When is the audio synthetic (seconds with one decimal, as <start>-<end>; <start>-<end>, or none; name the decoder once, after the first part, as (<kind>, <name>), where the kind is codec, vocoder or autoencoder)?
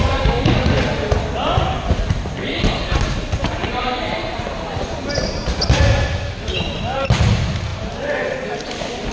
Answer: none